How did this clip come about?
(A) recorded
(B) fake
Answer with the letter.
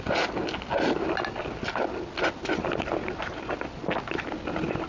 A